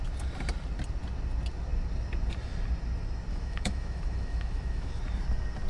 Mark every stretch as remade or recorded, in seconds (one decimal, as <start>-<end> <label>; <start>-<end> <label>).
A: 0.0-3.3 recorded; 3.3-5.0 remade; 5.0-5.7 recorded